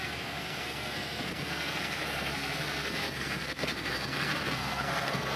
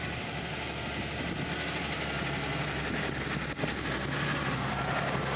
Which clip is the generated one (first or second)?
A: first